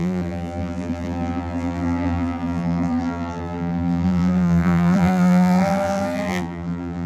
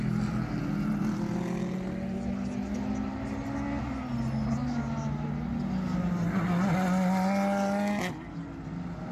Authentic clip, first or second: second